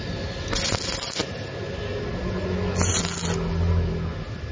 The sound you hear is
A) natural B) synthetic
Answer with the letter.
A